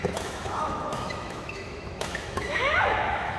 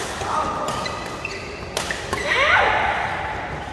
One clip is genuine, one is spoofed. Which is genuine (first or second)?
second